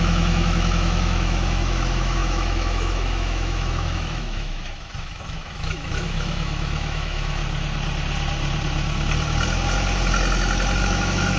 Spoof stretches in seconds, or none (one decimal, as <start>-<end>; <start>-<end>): 0.0-7.4; 10.8-11.4

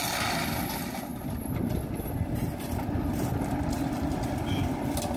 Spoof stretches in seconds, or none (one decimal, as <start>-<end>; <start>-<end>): none

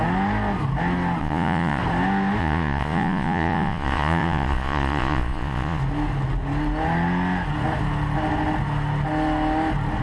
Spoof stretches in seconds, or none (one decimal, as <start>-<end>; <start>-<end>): 1.2-1.8; 2.4-5.8

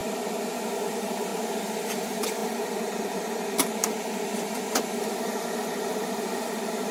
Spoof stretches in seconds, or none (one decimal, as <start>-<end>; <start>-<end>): 0.9-1.3; 1.9-6.9